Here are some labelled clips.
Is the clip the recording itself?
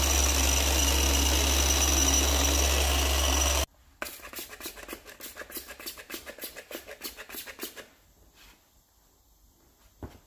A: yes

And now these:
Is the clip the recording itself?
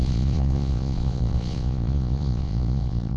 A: no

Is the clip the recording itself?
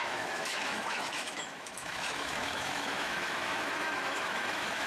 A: no